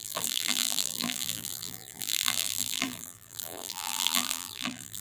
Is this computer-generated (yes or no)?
yes